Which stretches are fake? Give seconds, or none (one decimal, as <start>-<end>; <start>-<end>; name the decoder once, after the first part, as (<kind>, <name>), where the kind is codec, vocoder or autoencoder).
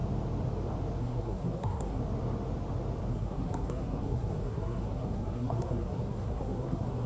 1.0-2.0 (codec, SNAC); 3.1-7.1